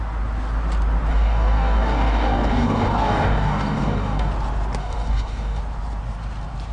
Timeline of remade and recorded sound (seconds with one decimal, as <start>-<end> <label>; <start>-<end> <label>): 0.0-1.1 recorded; 1.1-4.3 remade; 4.3-4.8 recorded; 4.8-5.6 remade; 5.6-6.7 recorded